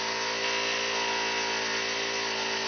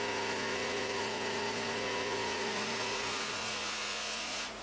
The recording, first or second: first